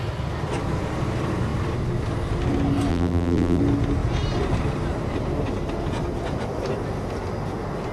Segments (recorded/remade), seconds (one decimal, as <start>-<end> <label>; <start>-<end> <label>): 0.0-2.9 recorded; 2.9-3.6 remade; 3.6-7.9 recorded